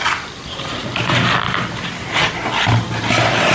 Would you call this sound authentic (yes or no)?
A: yes